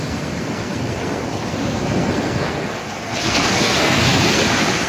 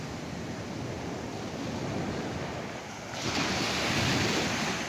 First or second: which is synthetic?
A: first